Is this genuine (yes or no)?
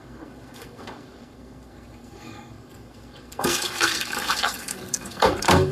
no